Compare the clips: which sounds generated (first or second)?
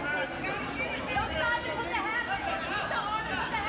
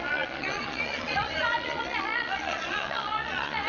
second